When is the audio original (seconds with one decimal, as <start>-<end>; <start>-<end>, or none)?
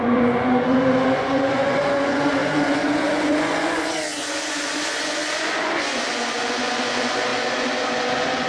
none